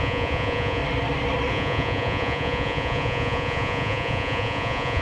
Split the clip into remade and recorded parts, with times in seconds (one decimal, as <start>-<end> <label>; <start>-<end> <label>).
0.0-0.8 remade; 0.8-1.5 recorded; 1.5-5.0 remade